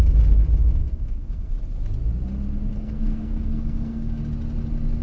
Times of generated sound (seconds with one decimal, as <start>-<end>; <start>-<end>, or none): 0.8-1.5; 2.7-4.2